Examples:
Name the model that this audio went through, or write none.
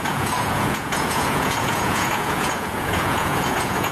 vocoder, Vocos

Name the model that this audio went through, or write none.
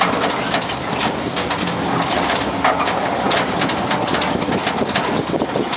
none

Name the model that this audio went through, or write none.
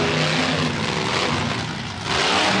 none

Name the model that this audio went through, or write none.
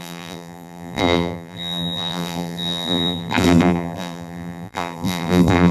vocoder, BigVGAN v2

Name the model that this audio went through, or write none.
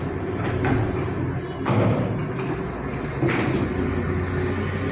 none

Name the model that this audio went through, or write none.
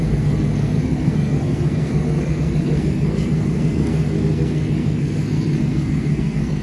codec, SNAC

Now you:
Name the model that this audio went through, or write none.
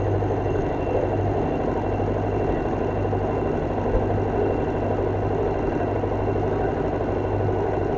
none